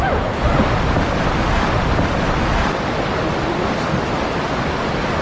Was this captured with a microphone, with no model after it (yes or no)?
yes